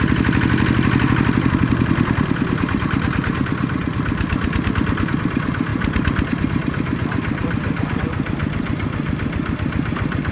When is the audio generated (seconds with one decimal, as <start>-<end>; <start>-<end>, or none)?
none